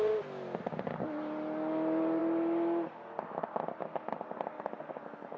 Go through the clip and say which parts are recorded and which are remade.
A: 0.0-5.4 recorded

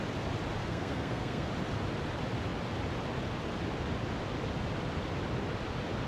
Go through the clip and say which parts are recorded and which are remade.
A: 0.0-0.6 recorded; 0.6-1.5 remade; 1.5-6.1 recorded

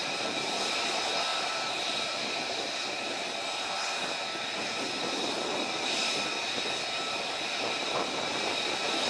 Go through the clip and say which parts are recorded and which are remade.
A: 0.0-9.1 recorded

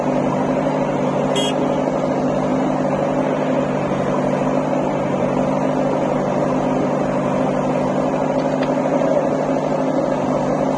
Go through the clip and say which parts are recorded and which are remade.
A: 0.0-10.8 recorded